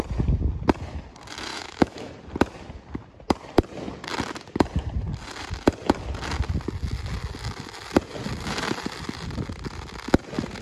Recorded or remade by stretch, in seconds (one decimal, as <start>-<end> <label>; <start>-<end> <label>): 0.0-1.5 recorded; 1.5-2.1 remade; 2.1-10.6 recorded